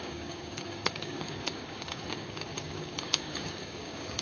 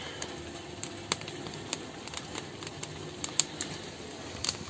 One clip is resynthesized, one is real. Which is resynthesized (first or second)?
first